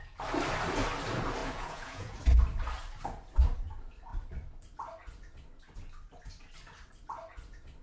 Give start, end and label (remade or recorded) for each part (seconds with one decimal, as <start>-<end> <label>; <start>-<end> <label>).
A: 0.0-1.4 recorded; 1.4-2.2 remade; 2.2-7.8 recorded